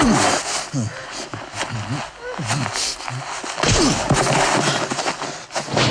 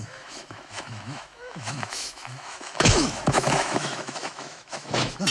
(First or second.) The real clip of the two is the first